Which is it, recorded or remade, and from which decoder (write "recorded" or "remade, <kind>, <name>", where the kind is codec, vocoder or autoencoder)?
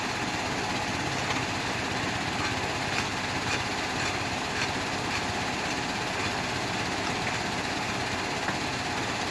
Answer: recorded